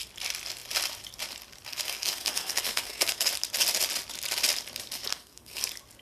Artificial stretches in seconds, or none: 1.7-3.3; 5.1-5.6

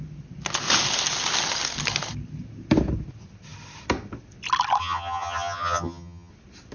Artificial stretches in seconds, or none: 4.8-6.3

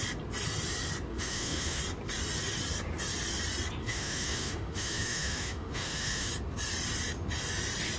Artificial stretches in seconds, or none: 1.1-1.8; 3.8-6.3